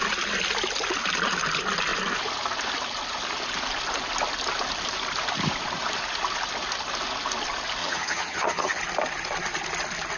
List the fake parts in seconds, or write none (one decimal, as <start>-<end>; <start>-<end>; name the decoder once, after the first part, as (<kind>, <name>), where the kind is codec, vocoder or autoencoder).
7.8-8.8 (vocoder, HiFi-GAN)